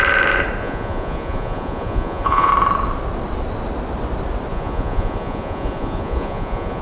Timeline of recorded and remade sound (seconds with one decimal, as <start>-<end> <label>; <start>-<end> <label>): 0.0-0.6 recorded; 0.6-2.5 remade; 2.5-4.5 recorded; 4.5-6.8 remade